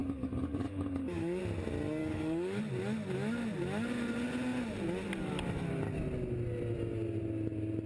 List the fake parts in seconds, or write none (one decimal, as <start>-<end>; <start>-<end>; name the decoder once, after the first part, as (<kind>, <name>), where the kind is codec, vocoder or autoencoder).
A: 0.0-1.4 (codec, DAC); 2.0-2.6